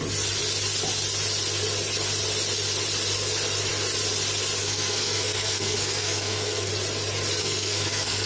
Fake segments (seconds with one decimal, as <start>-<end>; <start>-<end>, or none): 4.6-6.7; 7.4-8.3